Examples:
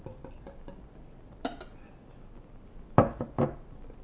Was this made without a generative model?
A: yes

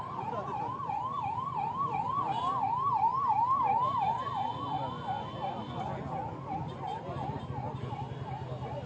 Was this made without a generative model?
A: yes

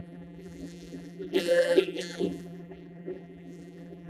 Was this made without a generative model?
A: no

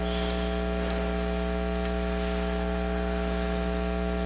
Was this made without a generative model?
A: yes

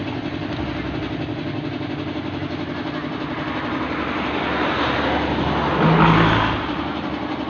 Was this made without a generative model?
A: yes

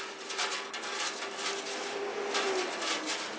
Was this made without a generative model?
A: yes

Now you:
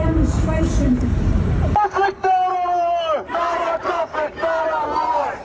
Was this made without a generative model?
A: no